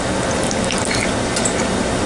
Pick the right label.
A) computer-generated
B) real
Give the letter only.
B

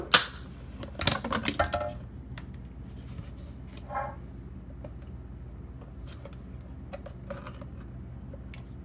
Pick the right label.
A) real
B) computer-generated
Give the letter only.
A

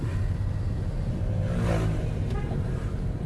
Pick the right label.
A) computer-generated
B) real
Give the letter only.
B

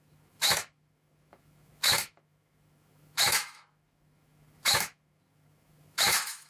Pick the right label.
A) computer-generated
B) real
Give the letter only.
A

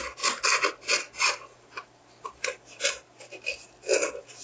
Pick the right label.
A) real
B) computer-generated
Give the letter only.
A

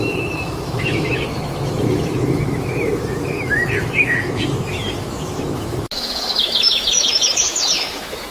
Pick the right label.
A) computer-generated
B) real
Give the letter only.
A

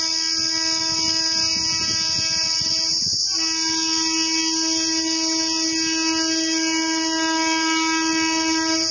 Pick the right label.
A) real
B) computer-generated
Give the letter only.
A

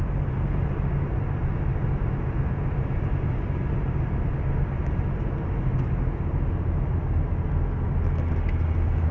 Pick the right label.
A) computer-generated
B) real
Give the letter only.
B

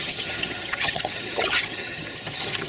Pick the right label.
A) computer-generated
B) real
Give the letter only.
A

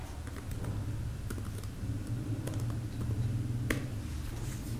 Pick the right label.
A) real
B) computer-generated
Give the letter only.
A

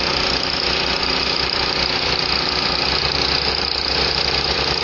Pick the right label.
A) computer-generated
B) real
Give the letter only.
A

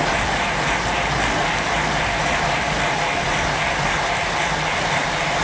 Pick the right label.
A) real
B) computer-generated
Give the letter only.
A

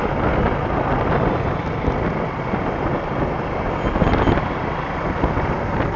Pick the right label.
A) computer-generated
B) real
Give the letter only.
B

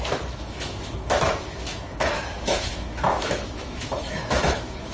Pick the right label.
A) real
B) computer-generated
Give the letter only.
B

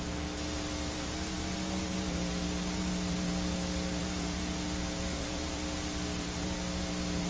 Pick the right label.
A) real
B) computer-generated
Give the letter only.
A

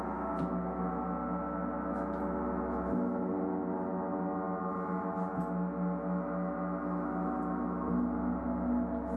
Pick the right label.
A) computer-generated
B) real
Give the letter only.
B